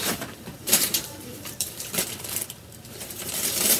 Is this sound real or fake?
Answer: fake